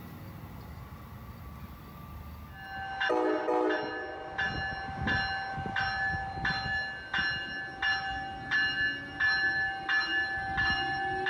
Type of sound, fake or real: real